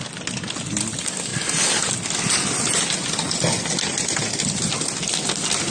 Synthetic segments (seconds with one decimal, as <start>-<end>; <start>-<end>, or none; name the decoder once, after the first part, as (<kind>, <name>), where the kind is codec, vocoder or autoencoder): none